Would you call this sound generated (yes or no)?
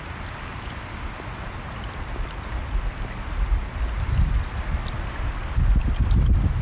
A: no